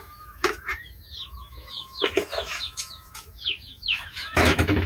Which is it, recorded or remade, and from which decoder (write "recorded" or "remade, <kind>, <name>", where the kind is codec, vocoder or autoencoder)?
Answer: remade, autoencoder, DAC-VAE